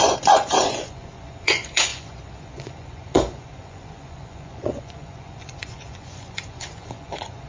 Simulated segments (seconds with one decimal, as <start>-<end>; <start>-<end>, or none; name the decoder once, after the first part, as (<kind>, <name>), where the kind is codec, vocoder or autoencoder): 0.0-7.5 (vocoder, Vocos)